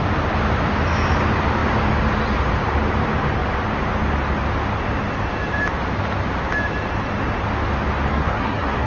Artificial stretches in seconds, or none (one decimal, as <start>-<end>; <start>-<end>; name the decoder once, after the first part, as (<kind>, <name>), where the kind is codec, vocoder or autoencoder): 8.1-8.9 (codec, SNAC)